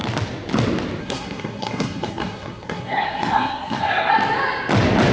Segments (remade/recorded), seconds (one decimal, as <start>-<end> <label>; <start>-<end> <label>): 0.0-1.0 recorded; 1.0-4.1 remade; 4.1-5.1 recorded